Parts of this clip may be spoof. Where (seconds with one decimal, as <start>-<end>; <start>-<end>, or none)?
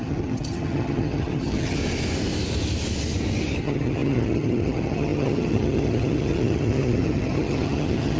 0.0-1.8; 3.6-8.2